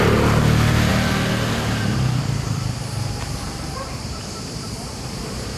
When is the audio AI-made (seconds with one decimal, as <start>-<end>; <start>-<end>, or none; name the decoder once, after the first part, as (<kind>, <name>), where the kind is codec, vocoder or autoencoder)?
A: 0.0-0.9 (vocoder, BigVGAN v2); 1.9-5.6